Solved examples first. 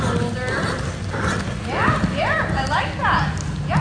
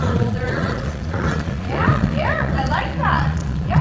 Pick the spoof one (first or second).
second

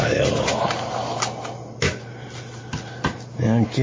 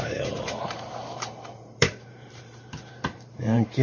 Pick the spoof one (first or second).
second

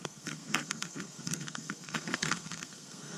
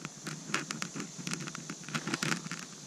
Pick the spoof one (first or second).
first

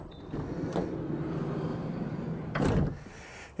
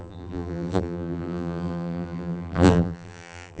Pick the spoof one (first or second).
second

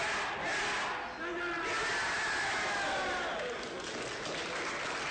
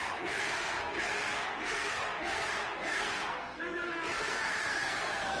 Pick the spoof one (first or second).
second